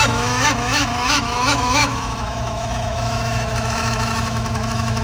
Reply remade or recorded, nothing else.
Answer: remade